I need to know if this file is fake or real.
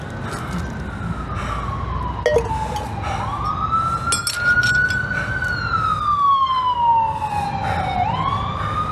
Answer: real